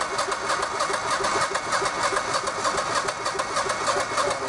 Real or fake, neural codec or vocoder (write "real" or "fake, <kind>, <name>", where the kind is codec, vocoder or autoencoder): real